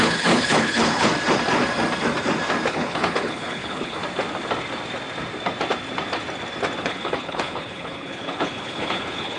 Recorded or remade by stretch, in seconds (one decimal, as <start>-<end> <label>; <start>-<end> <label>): 0.0-1.1 remade; 1.1-2.7 recorded; 2.7-4.0 remade; 4.0-6.8 recorded; 6.8-9.4 remade

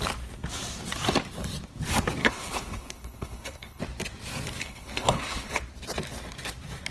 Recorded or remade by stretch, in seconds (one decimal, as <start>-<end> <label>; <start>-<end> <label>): 0.0-2.2 recorded; 2.2-3.8 remade; 3.8-4.6 recorded; 4.6-5.6 remade; 5.6-6.9 recorded

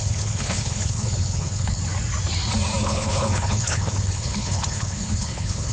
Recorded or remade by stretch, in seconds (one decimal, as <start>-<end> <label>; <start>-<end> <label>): 0.0-1.8 remade; 1.8-2.8 recorded; 2.8-5.7 remade

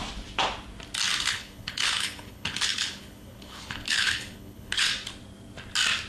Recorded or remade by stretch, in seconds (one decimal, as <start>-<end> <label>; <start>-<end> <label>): 0.0-1.2 recorded; 1.2-4.9 remade; 4.9-6.1 recorded

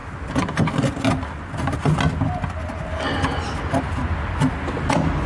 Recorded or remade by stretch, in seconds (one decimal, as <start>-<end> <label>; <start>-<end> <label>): 0.0-5.3 recorded

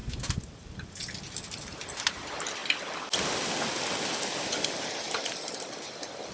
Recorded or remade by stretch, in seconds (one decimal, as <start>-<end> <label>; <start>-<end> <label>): 0.0-6.3 recorded

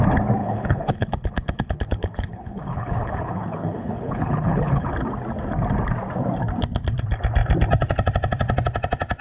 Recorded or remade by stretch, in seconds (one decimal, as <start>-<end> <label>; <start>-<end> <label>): 0.0-0.4 recorded; 0.4-4.9 remade; 4.9-9.2 recorded

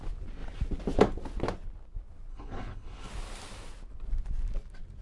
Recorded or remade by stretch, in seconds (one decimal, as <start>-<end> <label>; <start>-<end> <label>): 0.0-2.3 recorded; 2.3-3.1 remade; 3.1-5.0 recorded